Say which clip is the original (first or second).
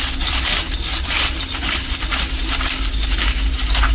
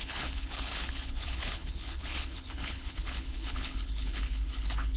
first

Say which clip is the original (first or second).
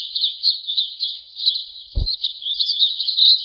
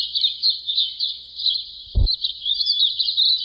second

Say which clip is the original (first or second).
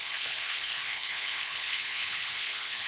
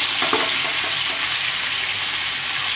second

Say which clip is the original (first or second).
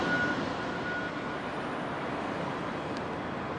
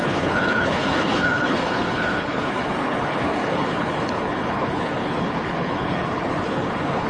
first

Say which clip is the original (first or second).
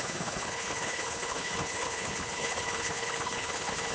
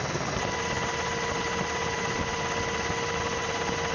second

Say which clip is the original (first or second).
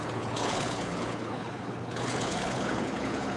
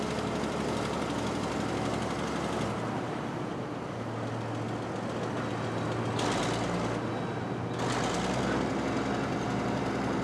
second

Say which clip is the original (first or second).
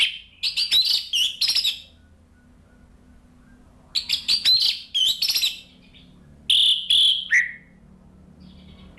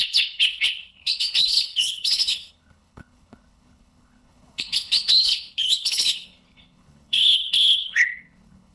first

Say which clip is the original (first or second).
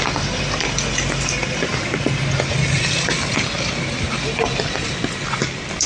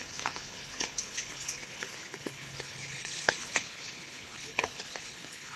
first